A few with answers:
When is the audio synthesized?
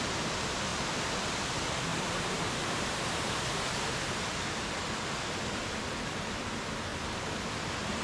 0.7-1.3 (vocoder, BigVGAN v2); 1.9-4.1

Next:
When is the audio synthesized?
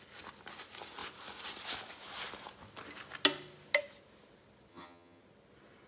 4.7-5.2 (vocoder, HiFi-GAN)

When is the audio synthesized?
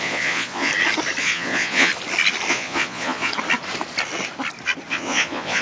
0.0-0.7 (vocoder, Vocos); 1.2-1.9; 2.5-3.3; 4.9-5.6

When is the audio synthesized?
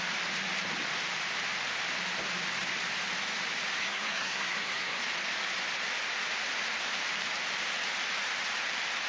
3.8-5.0 (codec, SNAC)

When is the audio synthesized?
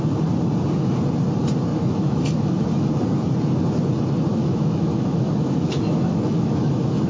1.7-2.9 (autoencoder, DAC-VAE); 4.3-7.1